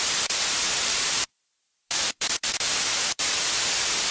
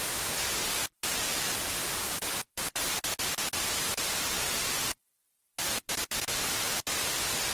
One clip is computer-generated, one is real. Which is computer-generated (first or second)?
first